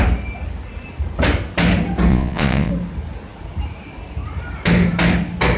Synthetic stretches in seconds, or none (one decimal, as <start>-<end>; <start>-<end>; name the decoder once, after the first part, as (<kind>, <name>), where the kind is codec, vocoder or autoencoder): 2.1-2.7 (vocoder, Vocos)

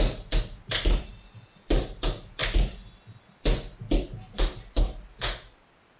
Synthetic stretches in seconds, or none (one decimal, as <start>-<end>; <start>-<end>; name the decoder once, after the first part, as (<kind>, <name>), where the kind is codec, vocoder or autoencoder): none

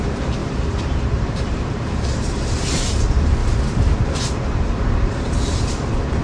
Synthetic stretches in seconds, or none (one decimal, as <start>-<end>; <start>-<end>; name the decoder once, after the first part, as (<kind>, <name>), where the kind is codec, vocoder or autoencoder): 0.4-3.0 (vocoder, BigVGAN v2); 3.4-5.7

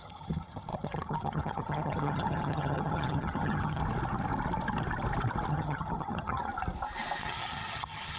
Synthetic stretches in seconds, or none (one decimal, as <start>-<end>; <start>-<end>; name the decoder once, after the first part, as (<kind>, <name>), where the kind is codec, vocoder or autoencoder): 0.0-3.8 (vocoder, HiFi-GAN); 5.5-6.5; 7.2-8.2

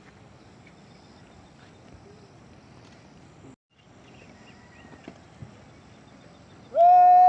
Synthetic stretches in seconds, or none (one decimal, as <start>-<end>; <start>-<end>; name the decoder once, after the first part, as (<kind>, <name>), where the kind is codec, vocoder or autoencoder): none

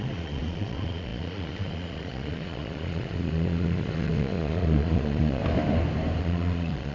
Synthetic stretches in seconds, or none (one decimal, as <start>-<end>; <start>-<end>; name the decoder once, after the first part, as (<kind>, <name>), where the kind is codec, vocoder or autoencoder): 0.0-5.4 (vocoder, Vocos); 6.2-6.9

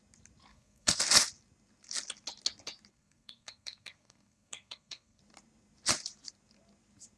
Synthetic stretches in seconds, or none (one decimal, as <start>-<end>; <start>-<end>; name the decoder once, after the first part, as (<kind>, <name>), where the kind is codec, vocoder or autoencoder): 0.5-1.0 (codec, SNAC); 2.9-5.2

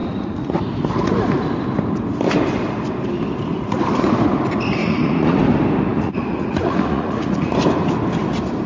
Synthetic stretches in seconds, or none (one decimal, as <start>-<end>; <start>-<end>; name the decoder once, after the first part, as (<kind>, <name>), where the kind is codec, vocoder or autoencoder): 0.0-0.6 (vocoder, Vocos); 4.8-5.4; 5.9-7.5